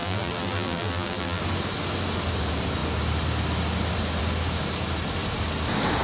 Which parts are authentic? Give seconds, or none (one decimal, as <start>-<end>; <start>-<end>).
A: 1.4-6.0